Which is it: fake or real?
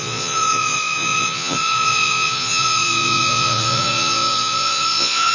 fake